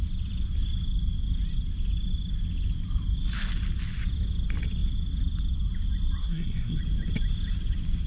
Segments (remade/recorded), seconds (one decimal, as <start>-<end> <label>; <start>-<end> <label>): 0.0-6.2 recorded; 6.2-6.8 remade; 6.8-8.1 recorded